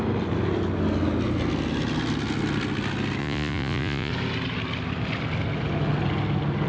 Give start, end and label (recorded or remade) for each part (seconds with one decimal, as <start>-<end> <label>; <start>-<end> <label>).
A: 0.0-3.2 recorded; 3.2-4.1 remade; 4.1-6.7 recorded